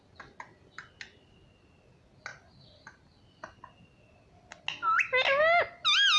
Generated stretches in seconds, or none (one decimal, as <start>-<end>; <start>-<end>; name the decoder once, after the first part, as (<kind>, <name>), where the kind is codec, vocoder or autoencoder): none